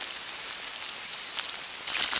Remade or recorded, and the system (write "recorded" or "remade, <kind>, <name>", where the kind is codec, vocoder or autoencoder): recorded